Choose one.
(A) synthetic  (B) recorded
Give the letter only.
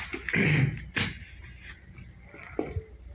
B